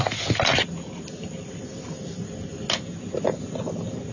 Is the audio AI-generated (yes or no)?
no